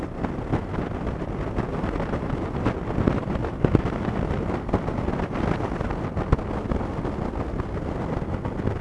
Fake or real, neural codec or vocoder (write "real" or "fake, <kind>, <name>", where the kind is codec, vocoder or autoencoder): real